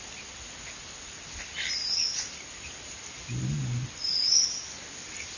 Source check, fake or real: real